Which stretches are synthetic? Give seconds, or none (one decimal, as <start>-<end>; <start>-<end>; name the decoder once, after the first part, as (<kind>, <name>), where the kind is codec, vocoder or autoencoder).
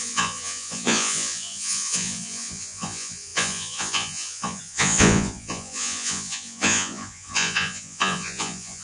0.0-8.8 (vocoder, Vocos)